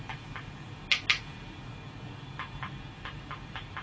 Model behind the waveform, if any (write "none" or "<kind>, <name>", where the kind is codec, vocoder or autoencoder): none